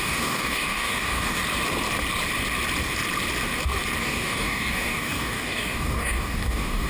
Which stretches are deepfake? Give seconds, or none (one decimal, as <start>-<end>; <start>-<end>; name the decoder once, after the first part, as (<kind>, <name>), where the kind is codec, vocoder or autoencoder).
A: 0.0-1.4 (codec, DAC); 4.0-6.9